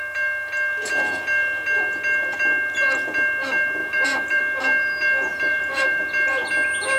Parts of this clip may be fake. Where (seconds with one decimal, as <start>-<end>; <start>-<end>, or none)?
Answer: 3.8-4.4; 5.3-6.0